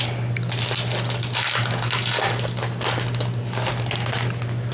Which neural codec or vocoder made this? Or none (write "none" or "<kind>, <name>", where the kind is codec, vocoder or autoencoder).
none